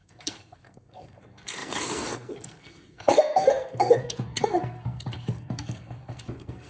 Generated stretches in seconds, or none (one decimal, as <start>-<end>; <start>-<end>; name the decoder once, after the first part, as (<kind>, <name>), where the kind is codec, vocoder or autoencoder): 0.0-6.7 (codec, SNAC)